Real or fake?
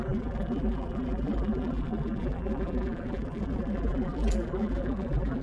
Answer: fake